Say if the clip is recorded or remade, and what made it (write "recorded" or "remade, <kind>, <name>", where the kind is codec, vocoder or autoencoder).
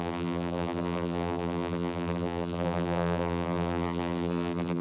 remade, vocoder, BigVGAN v2